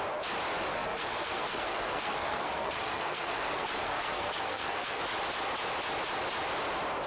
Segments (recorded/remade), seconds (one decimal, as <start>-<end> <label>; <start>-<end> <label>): 0.0-0.7 recorded; 0.7-5.0 remade; 5.0-7.1 recorded